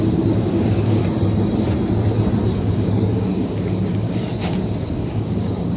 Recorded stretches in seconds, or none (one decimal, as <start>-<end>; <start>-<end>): 1.0-2.6